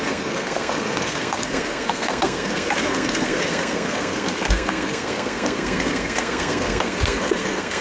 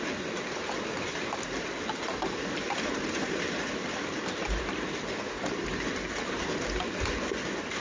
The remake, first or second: first